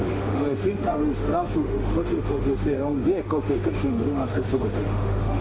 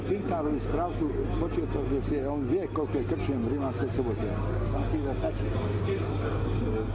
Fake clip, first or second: first